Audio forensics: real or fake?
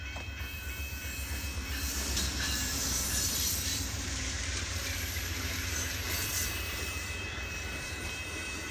fake